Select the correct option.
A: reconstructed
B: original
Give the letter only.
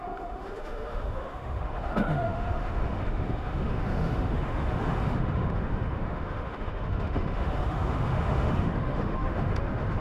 A